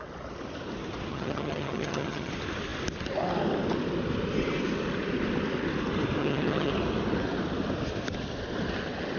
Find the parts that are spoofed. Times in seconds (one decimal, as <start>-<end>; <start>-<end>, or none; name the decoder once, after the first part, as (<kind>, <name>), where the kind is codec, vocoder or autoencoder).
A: 1.1-2.3 (vocoder, HiFi-GAN); 6.2-6.7